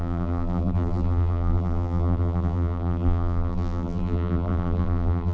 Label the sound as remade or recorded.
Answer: remade